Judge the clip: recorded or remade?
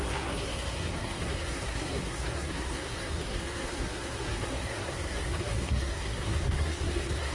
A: remade